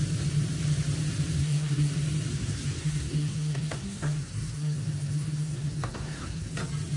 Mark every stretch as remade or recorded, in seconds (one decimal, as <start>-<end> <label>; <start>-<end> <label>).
0.0-1.4 recorded; 1.4-1.9 remade; 1.9-2.3 recorded; 2.3-6.5 remade; 6.5-7.0 recorded